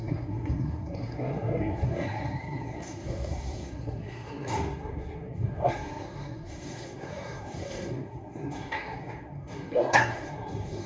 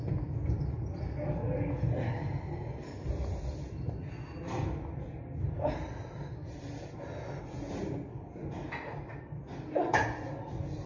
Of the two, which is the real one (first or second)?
second